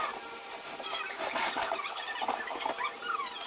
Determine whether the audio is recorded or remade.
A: remade